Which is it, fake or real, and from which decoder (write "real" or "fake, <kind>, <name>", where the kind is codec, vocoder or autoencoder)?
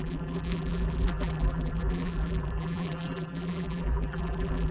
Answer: fake, vocoder, BigVGAN v2